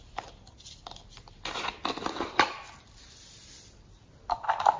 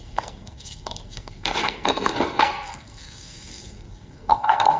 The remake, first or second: second